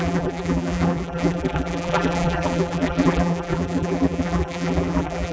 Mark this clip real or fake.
fake